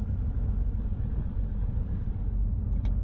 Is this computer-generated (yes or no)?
no